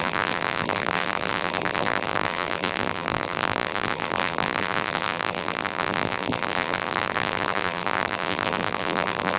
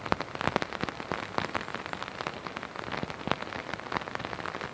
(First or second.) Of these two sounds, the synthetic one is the first